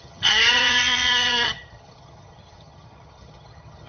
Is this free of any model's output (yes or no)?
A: no